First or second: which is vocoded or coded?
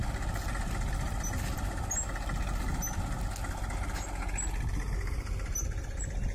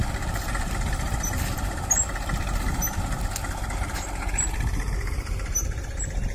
second